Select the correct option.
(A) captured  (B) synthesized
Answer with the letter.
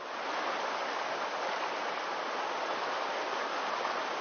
A